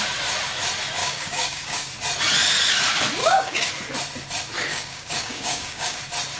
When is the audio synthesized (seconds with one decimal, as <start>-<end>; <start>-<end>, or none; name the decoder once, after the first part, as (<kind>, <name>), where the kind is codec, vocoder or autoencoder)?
1.0-1.9 (codec, DAC); 3.2-3.7; 4.7-6.0